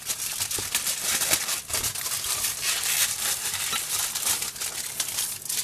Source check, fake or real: fake